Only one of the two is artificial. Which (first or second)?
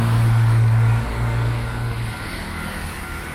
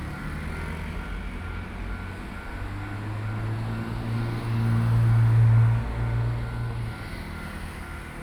first